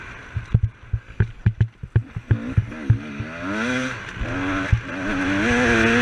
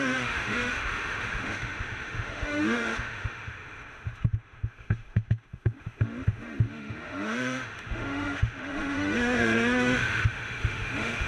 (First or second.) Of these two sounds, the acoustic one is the first